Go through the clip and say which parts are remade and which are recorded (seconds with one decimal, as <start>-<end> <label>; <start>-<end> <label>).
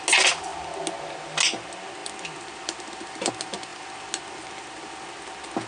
0.0-5.7 recorded